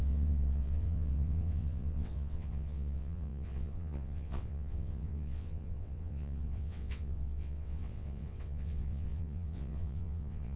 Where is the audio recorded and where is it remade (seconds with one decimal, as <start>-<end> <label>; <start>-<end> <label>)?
0.0-10.6 remade